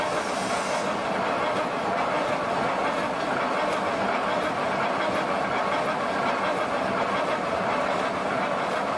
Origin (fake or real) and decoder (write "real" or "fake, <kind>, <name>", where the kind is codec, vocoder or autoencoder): real